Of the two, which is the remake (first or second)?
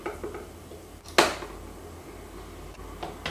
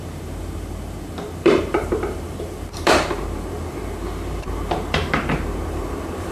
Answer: second